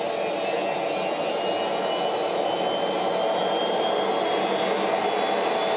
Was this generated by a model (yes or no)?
no